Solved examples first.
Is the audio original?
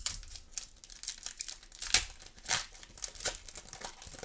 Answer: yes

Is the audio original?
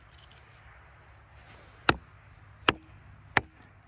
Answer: yes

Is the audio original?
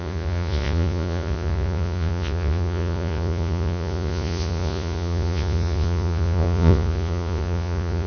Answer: no